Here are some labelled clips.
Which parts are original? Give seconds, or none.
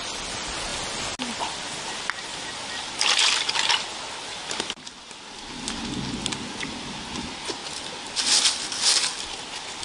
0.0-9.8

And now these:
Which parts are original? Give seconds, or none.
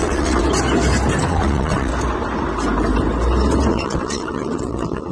0.4-1.2; 1.9-3.7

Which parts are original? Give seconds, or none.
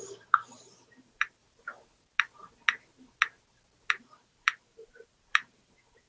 1.4-3.9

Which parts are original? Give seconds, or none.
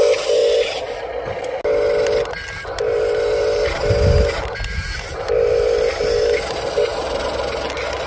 0.0-8.1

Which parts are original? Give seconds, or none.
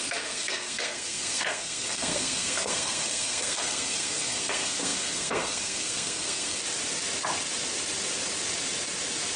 6.6-9.4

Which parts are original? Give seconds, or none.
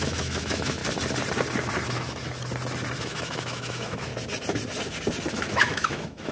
0.8-3.0; 4.1-5.3